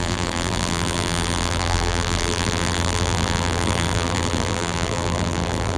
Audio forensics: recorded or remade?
remade